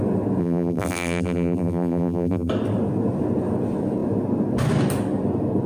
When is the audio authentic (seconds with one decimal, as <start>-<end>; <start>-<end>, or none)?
0.0-0.4; 2.5-5.7